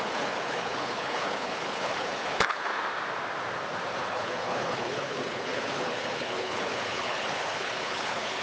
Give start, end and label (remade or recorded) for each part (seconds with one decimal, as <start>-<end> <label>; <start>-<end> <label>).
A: 0.0-2.7 remade; 2.7-4.0 recorded; 4.0-8.4 remade